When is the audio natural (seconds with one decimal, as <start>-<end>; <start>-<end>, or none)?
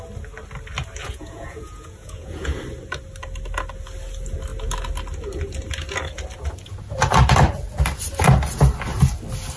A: 0.0-1.0; 2.6-9.6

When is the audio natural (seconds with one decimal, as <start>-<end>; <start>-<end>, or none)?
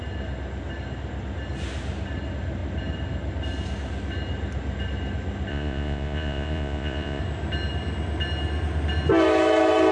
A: 0.0-5.5; 7.2-9.9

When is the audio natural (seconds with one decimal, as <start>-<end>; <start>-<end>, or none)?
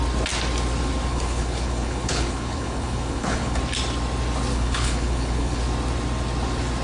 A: 0.0-1.1; 3.6-4.5; 5.6-6.8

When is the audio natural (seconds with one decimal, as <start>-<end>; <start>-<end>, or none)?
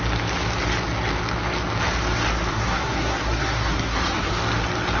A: 0.0-2.5; 4.3-5.0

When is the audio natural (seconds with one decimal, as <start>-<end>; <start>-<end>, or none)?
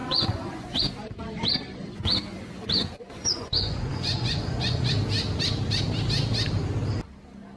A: 0.8-1.7; 4.9-7.6